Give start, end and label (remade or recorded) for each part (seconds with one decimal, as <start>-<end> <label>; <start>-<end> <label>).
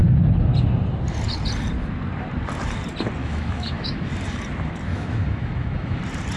0.0-3.2 recorded; 3.2-4.1 remade; 4.1-4.9 recorded; 4.9-6.0 remade; 6.0-6.4 recorded